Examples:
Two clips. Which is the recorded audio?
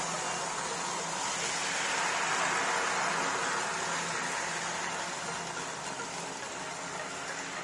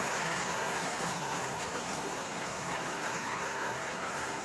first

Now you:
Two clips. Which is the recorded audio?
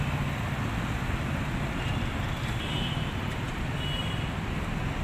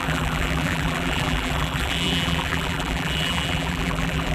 first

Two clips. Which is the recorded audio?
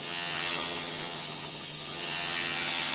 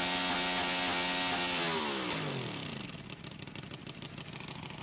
second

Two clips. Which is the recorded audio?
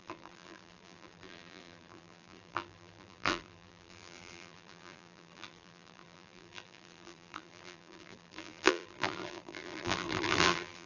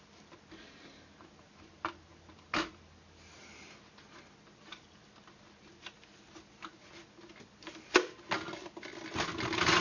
second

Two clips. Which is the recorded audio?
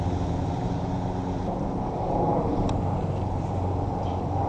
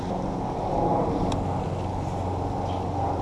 second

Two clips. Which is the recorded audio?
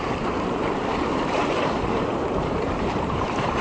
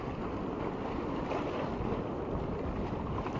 second